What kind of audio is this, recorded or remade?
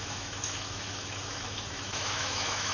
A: remade